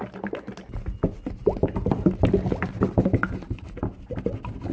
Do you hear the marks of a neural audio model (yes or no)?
no